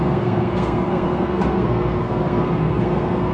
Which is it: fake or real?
fake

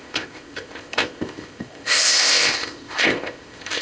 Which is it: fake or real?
fake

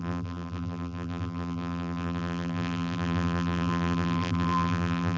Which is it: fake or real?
fake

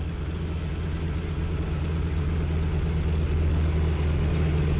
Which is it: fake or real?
real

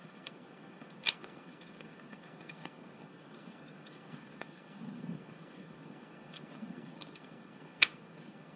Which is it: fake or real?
fake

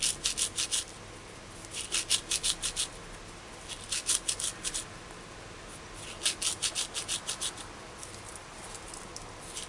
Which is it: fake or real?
real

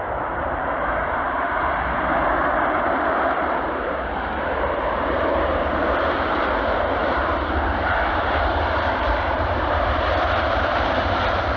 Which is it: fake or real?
fake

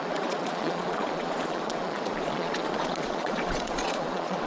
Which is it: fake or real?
fake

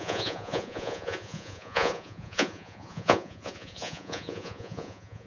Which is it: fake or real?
fake